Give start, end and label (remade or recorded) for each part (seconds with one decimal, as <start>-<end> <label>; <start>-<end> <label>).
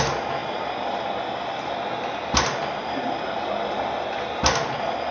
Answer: 0.0-5.1 recorded